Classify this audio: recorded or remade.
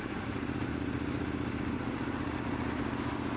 recorded